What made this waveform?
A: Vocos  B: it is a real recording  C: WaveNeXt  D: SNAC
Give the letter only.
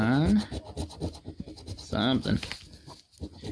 B